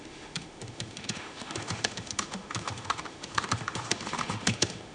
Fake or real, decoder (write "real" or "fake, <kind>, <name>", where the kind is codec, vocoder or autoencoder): fake, autoencoder, DAC-VAE